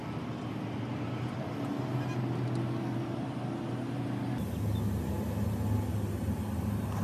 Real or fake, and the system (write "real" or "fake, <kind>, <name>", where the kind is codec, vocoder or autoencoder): real